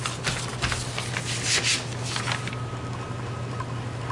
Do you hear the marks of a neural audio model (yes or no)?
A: no